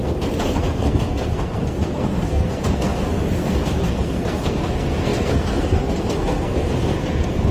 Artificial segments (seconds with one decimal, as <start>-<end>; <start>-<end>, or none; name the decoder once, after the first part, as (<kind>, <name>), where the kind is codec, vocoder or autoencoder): 0.0-7.5 (codec, SNAC)